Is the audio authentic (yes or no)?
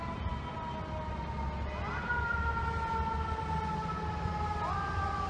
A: yes